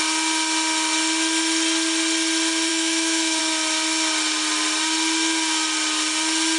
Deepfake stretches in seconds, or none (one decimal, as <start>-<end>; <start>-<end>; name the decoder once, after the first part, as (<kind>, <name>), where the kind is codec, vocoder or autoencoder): 2.7-3.4 (autoencoder, DAC-VAE)